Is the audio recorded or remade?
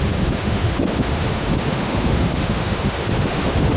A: remade